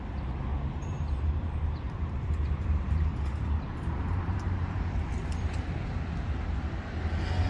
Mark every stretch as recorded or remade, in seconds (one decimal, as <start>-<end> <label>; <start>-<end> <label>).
0.0-0.5 recorded; 0.5-5.0 remade; 5.0-7.5 recorded